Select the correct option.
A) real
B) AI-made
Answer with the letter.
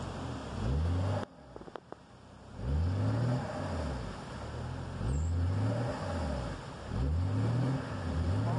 A